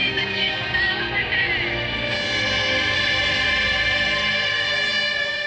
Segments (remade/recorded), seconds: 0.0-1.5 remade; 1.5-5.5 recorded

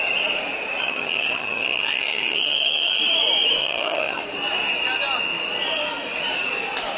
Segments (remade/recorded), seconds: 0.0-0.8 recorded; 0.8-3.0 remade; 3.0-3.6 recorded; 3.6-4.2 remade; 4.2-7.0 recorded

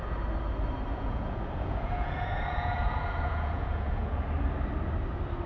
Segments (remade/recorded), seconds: 0.0-0.9 recorded; 0.9-4.2 remade; 4.2-5.5 recorded

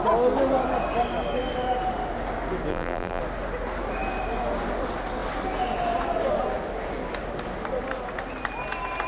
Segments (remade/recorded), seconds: 0.0-2.7 recorded; 2.7-3.2 remade; 3.2-9.1 recorded

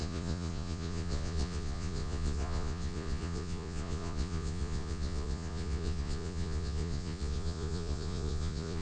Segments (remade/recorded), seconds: 0.0-8.8 remade

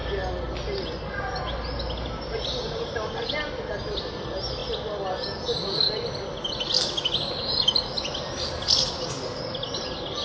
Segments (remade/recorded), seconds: 0.0-10.2 recorded

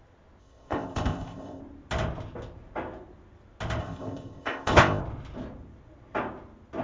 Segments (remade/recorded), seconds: 0.0-0.4 recorded; 0.4-1.6 remade; 1.6-3.8 recorded; 3.8-5.0 remade; 5.0-6.8 recorded

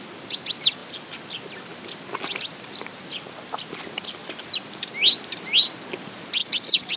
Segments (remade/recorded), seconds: 0.0-6.4 recorded; 6.4-7.0 remade